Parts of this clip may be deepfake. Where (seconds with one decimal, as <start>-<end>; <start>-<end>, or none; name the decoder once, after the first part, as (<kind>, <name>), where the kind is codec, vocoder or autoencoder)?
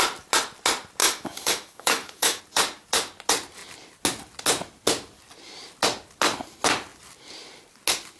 1.0-2.4 (autoencoder, DAC-VAE)